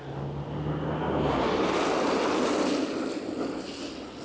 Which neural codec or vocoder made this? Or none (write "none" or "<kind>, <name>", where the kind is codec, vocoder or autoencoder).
none